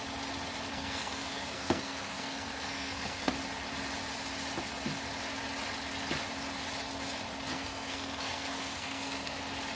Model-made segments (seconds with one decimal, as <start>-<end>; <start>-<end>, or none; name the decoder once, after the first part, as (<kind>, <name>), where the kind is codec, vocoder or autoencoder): 0.7-3.3 (codec, SNAC); 7.5-9.4